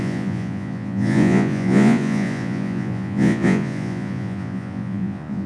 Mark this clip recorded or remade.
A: remade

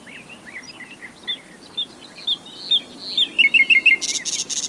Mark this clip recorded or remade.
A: recorded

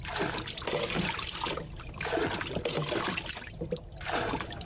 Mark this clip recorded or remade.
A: recorded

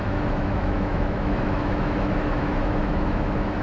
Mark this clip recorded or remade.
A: remade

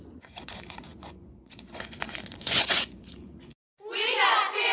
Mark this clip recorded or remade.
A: remade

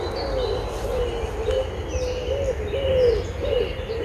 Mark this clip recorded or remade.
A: recorded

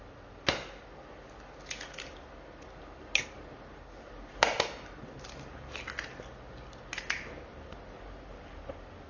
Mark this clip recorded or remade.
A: recorded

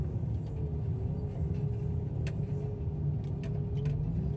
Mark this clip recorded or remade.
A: recorded